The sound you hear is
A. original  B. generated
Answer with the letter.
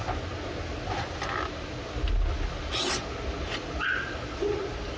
A